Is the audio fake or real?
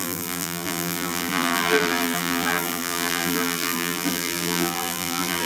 fake